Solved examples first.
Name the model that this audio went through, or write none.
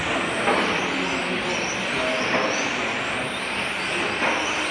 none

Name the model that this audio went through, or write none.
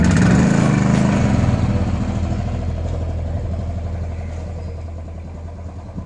none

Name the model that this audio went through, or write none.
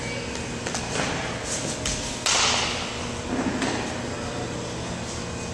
none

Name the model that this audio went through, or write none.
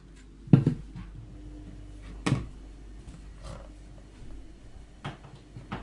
none